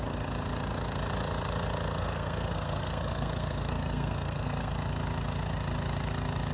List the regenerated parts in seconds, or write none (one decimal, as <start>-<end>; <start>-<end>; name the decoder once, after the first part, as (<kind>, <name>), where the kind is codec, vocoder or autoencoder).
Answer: 2.0-4.7 (codec, SNAC)